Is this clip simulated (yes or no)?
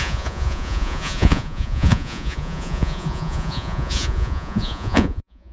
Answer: yes